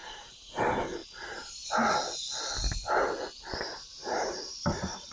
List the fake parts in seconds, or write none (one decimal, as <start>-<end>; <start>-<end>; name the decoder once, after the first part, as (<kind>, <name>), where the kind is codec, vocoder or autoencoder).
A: 0.0-0.6 (vocoder, BigVGAN v2); 1.0-1.7; 4.0-5.1